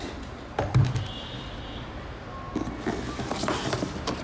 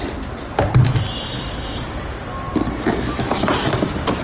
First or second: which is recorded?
first